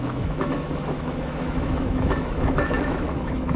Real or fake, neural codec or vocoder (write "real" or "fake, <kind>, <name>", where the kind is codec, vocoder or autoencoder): fake, autoencoder, DAC-VAE